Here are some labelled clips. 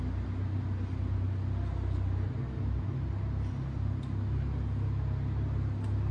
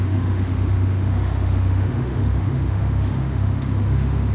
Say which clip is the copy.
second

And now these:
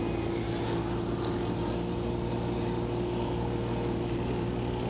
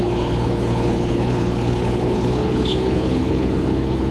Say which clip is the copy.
second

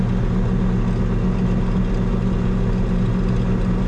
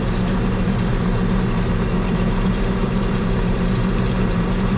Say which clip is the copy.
second